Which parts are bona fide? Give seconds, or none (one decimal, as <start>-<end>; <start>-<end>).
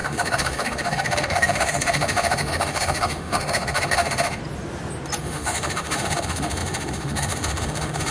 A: 4.4-5.2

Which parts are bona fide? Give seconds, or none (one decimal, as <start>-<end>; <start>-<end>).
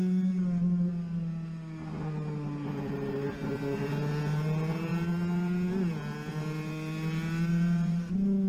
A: 0.0-7.5; 8.1-8.5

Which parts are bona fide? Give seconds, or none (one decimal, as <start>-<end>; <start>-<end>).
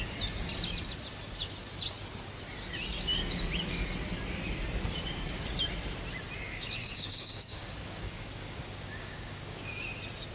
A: 0.0-6.5; 9.7-10.3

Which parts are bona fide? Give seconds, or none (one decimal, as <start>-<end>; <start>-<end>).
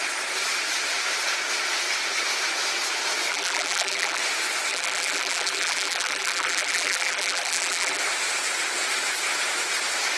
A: 0.0-3.3; 4.2-4.7; 8.0-10.2